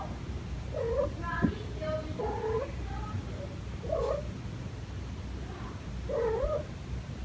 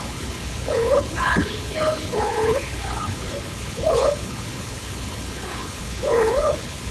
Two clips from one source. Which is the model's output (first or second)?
second